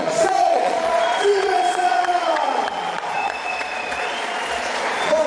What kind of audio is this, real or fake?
fake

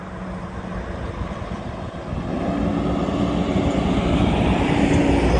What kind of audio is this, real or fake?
real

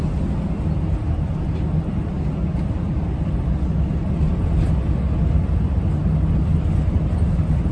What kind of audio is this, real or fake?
real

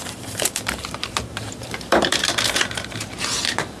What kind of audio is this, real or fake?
fake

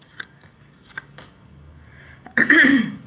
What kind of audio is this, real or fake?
fake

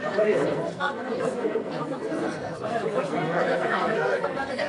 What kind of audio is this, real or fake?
fake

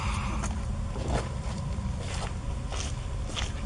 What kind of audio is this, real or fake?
real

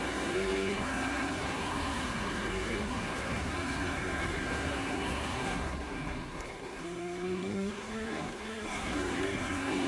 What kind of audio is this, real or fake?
fake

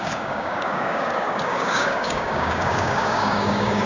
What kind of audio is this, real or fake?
fake